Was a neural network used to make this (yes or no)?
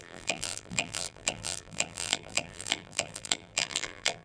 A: yes